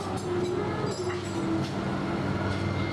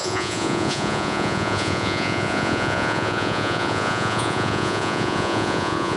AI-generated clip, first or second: second